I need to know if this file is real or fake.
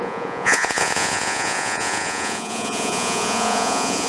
fake